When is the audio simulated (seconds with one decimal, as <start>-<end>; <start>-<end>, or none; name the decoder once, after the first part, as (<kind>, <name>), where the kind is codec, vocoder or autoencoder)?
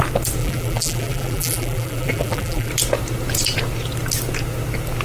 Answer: 0.4-2.7 (vocoder, BigVGAN v2)